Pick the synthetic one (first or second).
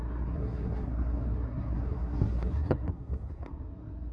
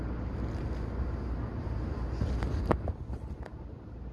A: first